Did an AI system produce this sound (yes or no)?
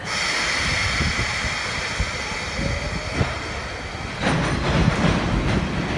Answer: no